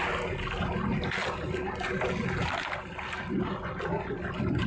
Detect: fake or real real